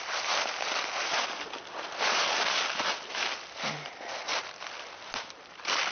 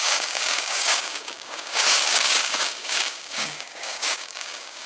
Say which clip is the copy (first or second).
second